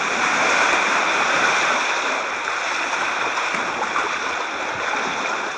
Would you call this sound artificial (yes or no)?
no